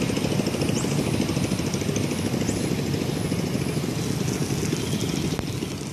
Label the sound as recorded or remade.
recorded